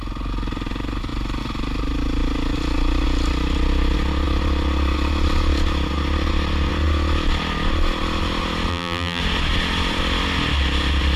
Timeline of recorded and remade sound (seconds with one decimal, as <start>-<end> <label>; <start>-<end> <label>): 0.0-8.7 recorded; 8.7-9.2 remade; 9.2-11.2 recorded